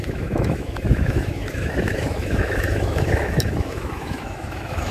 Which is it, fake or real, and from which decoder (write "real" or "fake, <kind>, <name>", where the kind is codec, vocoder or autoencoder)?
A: fake, autoencoder, DAC-VAE